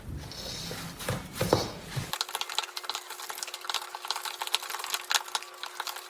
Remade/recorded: recorded